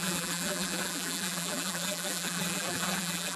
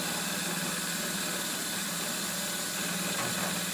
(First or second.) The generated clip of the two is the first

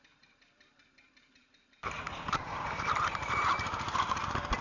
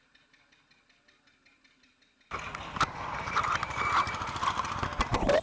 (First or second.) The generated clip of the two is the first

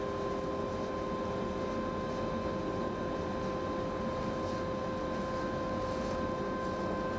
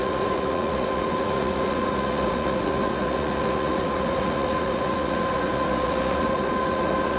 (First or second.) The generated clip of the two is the second